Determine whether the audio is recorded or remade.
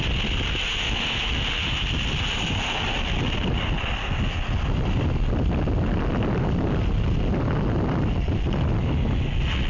recorded